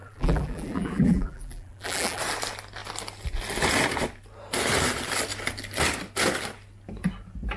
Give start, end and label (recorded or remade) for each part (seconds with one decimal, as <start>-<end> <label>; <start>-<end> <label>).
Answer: 0.0-2.2 remade; 2.2-7.6 recorded